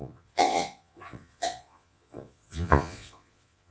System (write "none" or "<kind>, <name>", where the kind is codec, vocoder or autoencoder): vocoder, Vocos